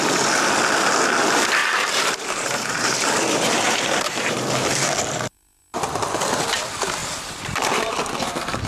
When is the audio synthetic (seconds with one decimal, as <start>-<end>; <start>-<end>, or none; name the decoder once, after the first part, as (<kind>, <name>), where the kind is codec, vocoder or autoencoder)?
1.6-5.6 (vocoder, BigVGAN v2); 7.0-8.7